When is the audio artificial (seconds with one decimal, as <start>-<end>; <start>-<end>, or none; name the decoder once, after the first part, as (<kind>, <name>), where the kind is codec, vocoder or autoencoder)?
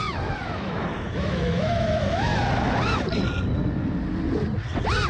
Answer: 0.0-2.3 (autoencoder, DAC-VAE)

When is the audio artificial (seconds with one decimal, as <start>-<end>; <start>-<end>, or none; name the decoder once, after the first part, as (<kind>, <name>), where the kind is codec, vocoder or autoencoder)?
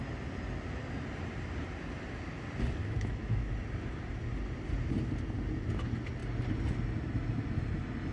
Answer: 2.8-3.5 (autoencoder, DAC-VAE)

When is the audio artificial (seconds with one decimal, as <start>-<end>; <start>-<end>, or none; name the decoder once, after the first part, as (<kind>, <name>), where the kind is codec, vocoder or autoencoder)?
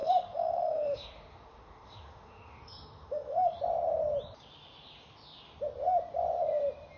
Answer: 0.0-3.6 (autoencoder, DAC-VAE)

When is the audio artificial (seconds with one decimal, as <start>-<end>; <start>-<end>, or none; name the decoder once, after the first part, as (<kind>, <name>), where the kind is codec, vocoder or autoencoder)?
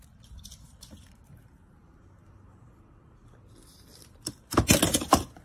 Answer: none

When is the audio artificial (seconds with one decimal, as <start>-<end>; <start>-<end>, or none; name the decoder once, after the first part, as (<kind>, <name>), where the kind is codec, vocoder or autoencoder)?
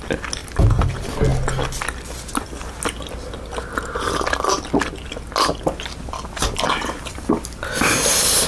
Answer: none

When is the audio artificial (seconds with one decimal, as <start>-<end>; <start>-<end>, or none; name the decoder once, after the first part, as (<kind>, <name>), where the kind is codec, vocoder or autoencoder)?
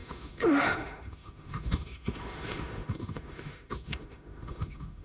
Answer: 0.0-5.0 (autoencoder, DAC-VAE)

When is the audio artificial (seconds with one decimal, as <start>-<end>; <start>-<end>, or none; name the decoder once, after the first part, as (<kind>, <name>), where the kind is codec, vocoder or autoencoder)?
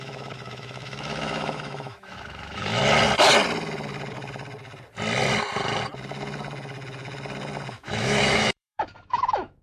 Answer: 0.0-2.8 (autoencoder, DAC-VAE); 7.7-9.6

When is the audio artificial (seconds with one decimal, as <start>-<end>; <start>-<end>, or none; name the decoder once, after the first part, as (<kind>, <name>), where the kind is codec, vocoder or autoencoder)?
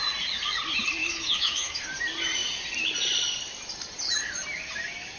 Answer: 1.0-1.8 (autoencoder, DAC-VAE)